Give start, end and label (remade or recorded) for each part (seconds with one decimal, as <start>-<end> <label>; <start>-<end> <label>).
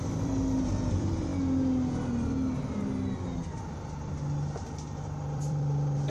0.0-1.3 remade; 1.3-5.0 recorded; 5.0-6.1 remade